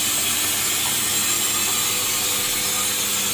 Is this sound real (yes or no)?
yes